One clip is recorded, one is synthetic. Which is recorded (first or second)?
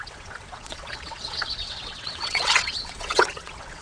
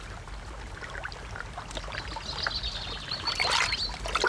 second